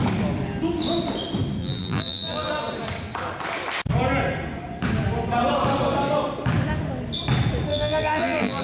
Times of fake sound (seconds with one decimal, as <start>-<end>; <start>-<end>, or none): 1.6-2.5; 7.7-8.6